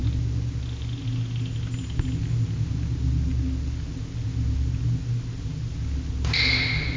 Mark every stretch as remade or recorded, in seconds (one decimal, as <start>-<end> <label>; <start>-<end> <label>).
0.0-7.0 recorded